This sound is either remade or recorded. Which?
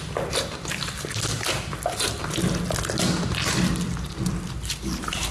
recorded